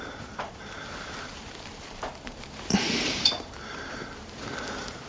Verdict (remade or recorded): remade